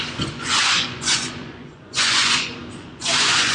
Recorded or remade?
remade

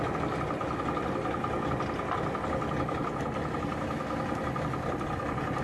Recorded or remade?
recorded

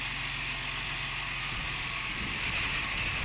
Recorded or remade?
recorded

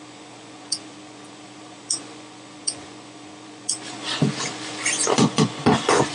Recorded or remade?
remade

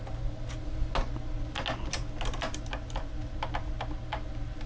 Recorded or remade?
recorded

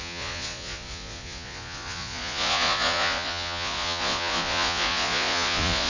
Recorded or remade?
remade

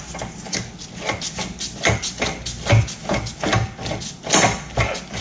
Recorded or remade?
recorded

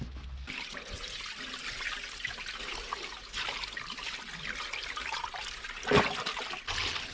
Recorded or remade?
recorded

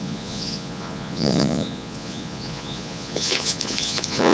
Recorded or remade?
remade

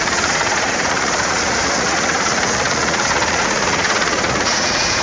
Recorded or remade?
remade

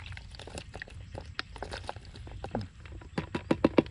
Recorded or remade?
recorded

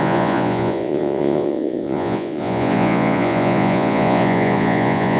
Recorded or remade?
remade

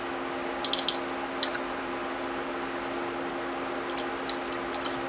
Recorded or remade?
recorded